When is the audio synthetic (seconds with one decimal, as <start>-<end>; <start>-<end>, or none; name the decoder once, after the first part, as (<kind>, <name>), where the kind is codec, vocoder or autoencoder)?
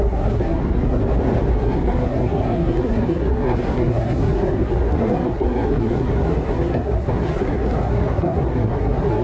0.0-1.0 (codec, SNAC); 1.5-9.2